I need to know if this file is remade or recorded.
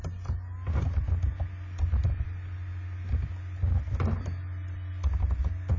recorded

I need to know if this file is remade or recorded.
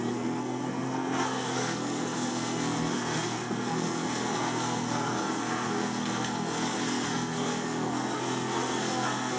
remade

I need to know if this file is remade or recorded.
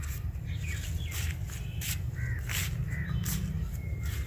recorded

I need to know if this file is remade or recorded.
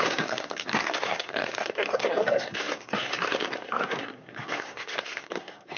remade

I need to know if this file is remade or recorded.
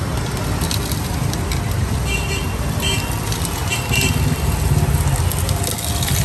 recorded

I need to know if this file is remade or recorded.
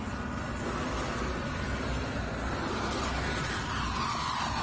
recorded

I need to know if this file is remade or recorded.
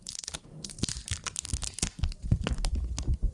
recorded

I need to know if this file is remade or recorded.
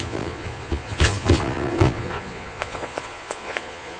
remade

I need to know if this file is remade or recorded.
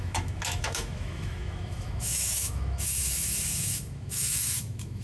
remade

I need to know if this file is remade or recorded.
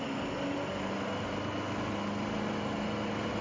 recorded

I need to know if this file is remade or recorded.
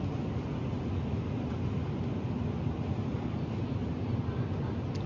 recorded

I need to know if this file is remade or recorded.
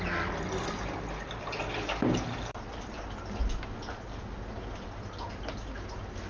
recorded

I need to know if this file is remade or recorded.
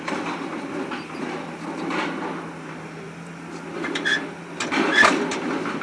recorded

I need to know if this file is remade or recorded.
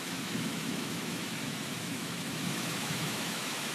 remade